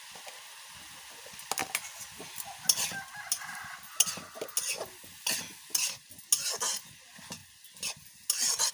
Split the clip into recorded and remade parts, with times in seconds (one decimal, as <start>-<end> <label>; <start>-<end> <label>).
0.0-8.7 recorded

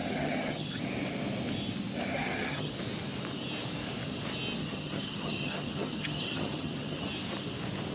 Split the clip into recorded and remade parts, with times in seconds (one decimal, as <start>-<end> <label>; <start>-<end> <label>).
0.0-0.8 remade; 0.8-2.1 recorded; 2.1-2.7 remade; 2.7-4.6 recorded; 4.6-7.1 remade; 7.1-7.9 recorded

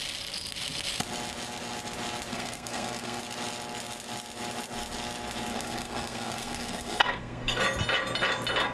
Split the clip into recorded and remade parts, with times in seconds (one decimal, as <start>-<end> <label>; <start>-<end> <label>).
0.0-2.3 recorded; 2.3-3.2 remade; 3.2-5.5 recorded; 5.5-7.6 remade; 7.6-8.7 recorded

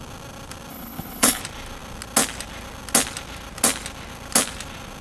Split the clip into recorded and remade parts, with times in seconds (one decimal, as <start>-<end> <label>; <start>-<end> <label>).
0.0-0.7 recorded; 0.7-1.4 remade; 1.4-5.0 recorded